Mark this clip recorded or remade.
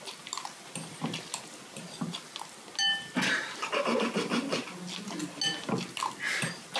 recorded